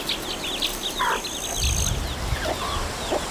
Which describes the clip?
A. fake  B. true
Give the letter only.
B